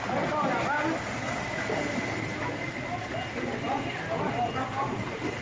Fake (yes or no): no